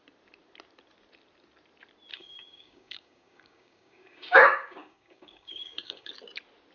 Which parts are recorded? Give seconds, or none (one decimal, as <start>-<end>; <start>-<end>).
0.0-2.1; 6.1-6.7